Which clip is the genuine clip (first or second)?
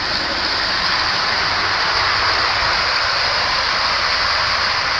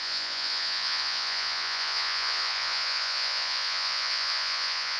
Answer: first